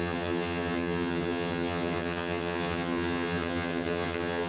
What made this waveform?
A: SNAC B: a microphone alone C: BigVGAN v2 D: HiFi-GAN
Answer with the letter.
D